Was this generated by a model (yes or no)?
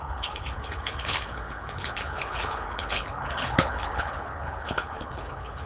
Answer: yes